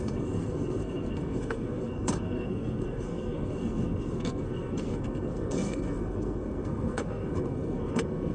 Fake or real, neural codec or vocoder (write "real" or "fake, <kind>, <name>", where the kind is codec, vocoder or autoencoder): fake, codec, SNAC